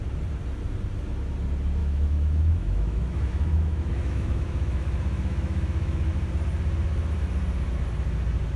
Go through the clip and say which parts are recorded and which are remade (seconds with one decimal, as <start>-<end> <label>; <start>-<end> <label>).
0.0-1.8 recorded; 1.8-6.1 remade; 6.1-8.6 recorded